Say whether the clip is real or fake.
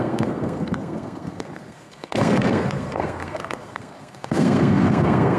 fake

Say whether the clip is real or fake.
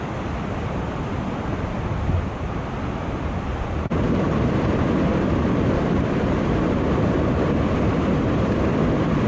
real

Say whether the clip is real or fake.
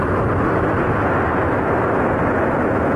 real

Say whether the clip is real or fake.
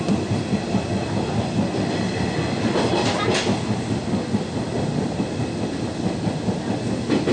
real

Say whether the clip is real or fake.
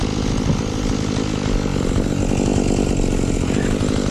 real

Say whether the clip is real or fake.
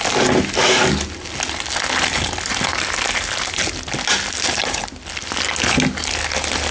real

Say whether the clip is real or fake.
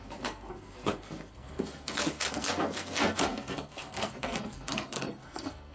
fake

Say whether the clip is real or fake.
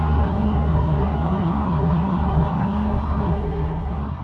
fake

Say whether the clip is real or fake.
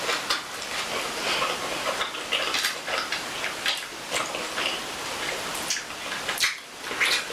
real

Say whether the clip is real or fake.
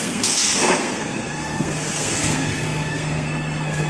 fake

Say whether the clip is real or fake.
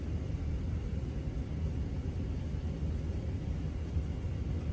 real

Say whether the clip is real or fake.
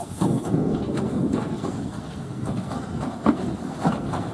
fake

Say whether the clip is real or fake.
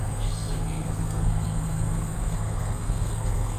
fake